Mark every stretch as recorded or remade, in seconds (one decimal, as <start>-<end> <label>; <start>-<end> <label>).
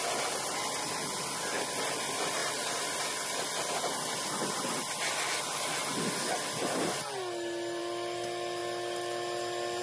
0.0-9.8 recorded